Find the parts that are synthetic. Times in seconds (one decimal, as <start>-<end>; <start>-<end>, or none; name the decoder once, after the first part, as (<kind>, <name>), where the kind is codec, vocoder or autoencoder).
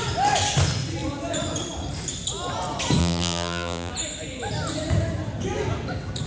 3.0-3.9 (vocoder, BigVGAN v2)